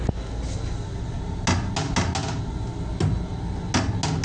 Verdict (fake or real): real